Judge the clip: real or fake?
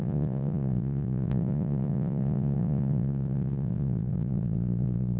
fake